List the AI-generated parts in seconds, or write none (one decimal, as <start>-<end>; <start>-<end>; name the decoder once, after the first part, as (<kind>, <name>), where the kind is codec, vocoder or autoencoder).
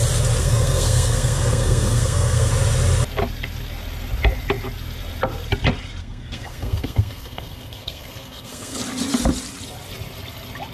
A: 0.4-2.5 (codec, SNAC); 6.0-8.8